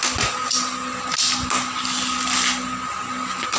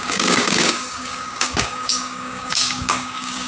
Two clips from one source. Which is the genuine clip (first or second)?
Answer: first